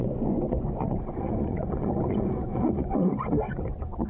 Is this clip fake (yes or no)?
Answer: yes